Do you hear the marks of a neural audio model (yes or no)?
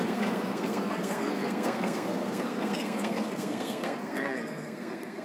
yes